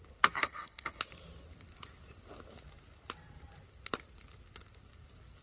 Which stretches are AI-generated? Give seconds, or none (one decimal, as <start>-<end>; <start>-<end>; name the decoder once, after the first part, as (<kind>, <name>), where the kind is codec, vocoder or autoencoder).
0.4-1.0 (codec, HILCodec)